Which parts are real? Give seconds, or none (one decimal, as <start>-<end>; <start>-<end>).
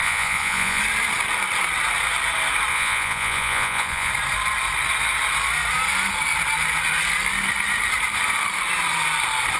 0.8-2.7; 4.1-9.6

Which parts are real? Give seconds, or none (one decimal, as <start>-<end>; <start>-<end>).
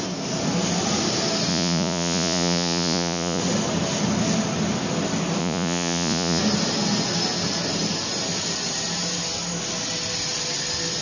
0.0-1.5; 3.4-5.4; 6.4-11.0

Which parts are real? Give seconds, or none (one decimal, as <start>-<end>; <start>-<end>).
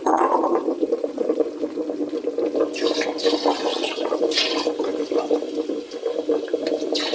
1.5-3.7; 4.2-7.1